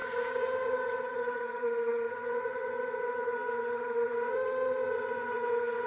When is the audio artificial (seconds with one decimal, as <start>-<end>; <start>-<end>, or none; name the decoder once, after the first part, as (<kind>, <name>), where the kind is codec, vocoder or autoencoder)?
0.0-5.9 (vocoder, HiFi-GAN)